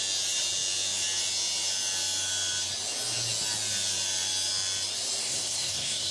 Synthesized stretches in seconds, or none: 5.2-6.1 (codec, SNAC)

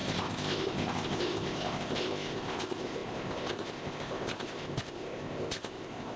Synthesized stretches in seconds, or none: 0.0-6.2 (codec, ZipCodec)

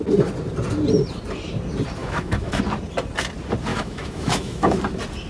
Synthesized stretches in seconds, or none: 2.0-2.6 (autoencoder, DAC-VAE); 3.7-4.8

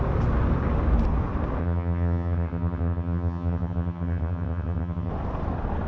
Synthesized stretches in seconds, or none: 1.6-5.1 (vocoder, HiFi-GAN)

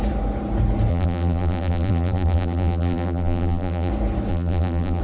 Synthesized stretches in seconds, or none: 0.9-3.9 (vocoder, BigVGAN v2); 4.3-5.0

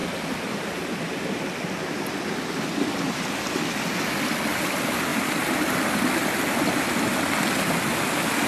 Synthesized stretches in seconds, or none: none

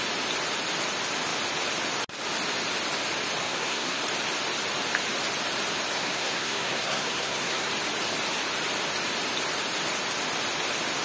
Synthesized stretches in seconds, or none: 3.4-4.0 (codec, SNAC); 6.0-7.7